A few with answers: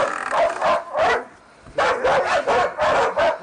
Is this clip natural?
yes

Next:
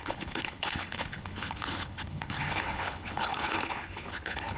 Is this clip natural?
no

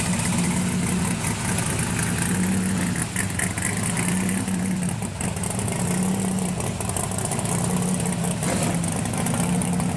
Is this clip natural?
yes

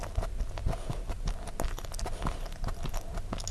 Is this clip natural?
yes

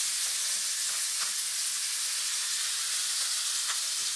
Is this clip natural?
yes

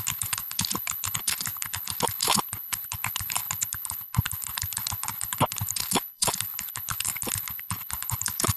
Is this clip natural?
no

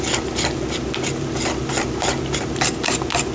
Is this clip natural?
yes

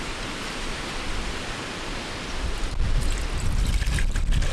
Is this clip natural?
yes